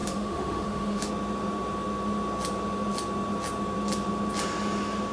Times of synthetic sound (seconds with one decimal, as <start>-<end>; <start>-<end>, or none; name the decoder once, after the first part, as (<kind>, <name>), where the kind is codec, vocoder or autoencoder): 0.0-1.1 (autoencoder, DAC-VAE)